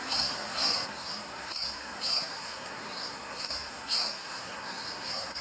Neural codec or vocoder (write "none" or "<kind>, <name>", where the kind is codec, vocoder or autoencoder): codec, SNAC